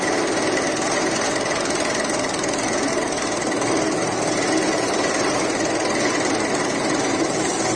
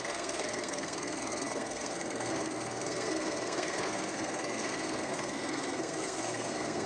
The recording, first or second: first